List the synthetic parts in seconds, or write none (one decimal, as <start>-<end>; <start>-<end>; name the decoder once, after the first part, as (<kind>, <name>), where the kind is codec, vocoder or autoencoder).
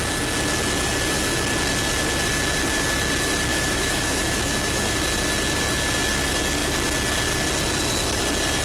3.5-5.0 (autoencoder, DAC-VAE)